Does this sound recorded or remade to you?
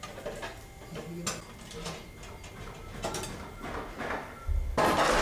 recorded